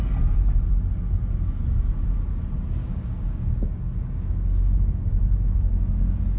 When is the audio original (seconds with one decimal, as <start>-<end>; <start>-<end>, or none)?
0.0-2.8